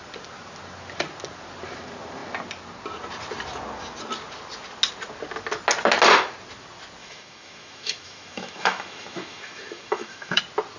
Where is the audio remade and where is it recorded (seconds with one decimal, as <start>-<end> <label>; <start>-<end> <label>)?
0.0-7.0 recorded; 7.0-10.4 remade; 10.4-10.8 recorded

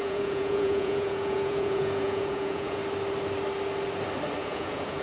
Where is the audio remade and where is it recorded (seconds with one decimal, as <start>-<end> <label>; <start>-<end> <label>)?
0.0-2.8 remade; 2.8-4.4 recorded; 4.4-5.0 remade

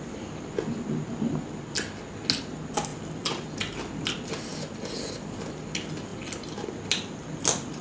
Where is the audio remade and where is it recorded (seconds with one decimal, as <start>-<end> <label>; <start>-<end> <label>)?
0.0-7.8 recorded

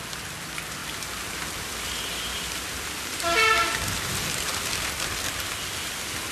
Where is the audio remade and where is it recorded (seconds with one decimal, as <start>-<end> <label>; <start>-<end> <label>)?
0.0-6.3 recorded

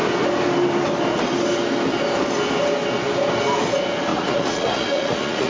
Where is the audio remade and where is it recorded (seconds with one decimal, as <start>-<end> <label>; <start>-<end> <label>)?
0.0-4.1 recorded; 4.1-5.5 remade

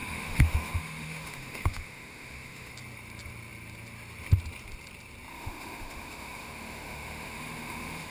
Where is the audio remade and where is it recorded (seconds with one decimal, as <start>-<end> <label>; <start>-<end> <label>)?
0.0-2.7 remade; 2.7-5.3 recorded; 5.3-8.1 remade

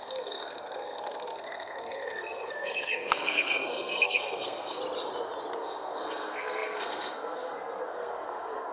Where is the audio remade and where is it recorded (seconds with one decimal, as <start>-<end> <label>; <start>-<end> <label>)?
0.0-4.8 remade; 4.8-5.6 recorded; 5.6-8.7 remade